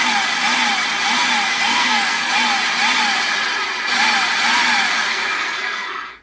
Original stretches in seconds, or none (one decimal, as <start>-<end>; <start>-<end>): 0.0-1.5; 2.3-5.1